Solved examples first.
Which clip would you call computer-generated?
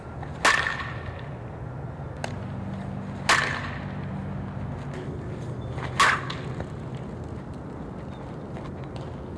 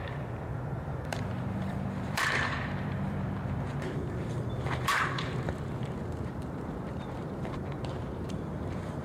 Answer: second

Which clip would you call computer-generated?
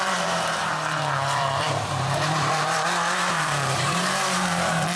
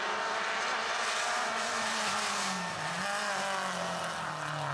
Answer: first